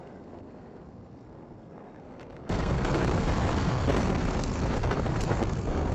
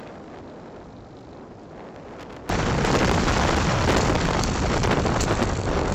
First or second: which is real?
second